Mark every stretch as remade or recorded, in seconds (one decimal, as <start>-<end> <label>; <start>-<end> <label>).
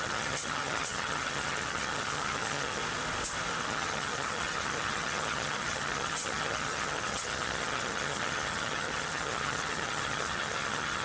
0.0-2.8 remade; 2.8-3.6 recorded; 3.6-11.0 remade